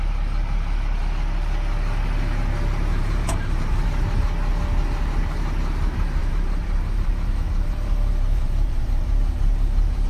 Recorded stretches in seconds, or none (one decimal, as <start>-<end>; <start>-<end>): 0.0-2.9; 3.8-6.2